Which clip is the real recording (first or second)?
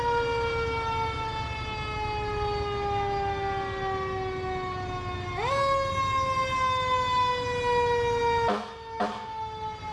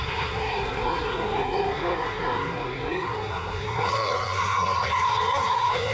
first